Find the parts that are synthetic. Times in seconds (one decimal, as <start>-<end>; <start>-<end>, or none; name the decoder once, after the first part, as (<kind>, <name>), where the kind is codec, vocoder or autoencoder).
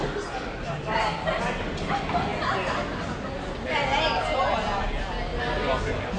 none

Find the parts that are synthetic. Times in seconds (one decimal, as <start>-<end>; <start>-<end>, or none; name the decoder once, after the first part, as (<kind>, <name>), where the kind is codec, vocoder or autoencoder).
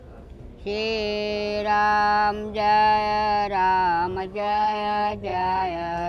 0.0-0.5 (codec, SNAC); 4.2-6.1